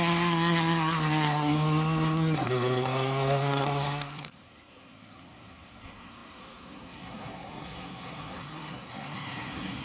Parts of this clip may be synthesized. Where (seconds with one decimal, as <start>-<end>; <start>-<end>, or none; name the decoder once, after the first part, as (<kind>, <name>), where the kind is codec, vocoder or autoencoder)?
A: 0.0-9.8 (codec, SNAC)